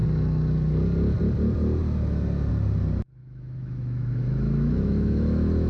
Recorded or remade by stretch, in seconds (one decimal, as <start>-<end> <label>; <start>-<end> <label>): 0.0-3.2 recorded; 3.2-5.7 remade